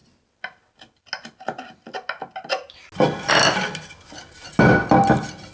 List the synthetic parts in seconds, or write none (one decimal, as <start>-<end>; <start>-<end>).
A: none